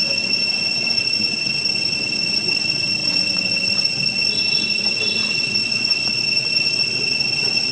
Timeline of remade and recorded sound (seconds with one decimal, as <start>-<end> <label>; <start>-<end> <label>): 0.0-7.7 remade